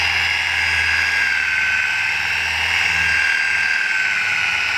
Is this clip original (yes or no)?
no